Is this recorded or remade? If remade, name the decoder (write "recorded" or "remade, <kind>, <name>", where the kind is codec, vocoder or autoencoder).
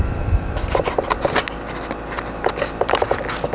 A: recorded